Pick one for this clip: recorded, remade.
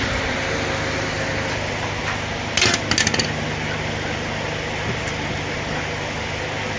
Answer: recorded